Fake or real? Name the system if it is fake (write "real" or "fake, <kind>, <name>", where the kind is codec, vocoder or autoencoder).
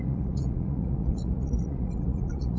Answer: fake, vocoder, Vocos